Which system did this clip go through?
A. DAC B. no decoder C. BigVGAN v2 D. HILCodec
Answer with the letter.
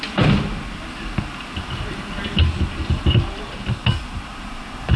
B